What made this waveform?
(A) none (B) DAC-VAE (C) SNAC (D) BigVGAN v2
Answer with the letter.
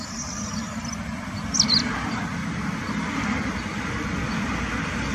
A